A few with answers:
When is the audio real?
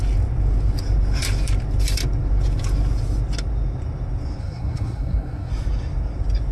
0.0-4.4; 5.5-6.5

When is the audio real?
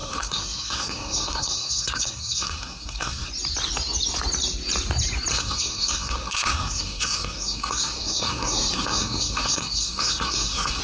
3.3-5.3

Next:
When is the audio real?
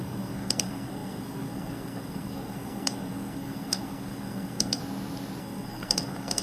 4.8-5.4